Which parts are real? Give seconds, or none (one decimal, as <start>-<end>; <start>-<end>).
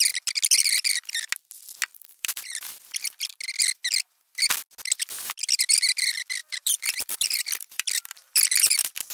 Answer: 0.0-1.9; 3.2-6.4